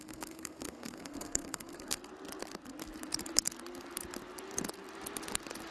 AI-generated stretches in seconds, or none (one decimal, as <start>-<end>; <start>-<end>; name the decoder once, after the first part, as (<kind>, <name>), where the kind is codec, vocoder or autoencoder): 0.0-2.0 (codec, SNAC)